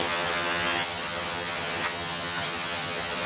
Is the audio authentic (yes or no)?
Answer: no